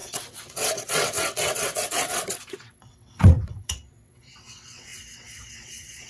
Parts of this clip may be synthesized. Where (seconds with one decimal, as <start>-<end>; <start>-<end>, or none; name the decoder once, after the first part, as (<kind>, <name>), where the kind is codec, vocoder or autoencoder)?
0.0-6.1 (vocoder, WaveNeXt)